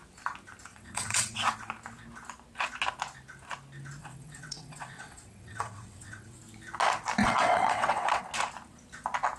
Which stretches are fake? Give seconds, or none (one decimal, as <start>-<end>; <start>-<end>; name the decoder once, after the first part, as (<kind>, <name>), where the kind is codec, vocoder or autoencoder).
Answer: 0.7-1.4 (vocoder, WaveNeXt); 4.0-6.4; 7.2-8.2